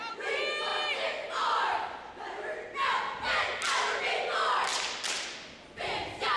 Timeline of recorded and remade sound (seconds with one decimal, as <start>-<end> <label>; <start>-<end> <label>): 0.0-6.4 recorded